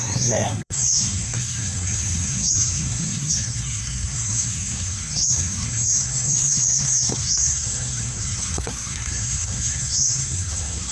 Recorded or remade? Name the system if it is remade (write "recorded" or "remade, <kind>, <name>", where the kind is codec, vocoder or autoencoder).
remade, codec, SNAC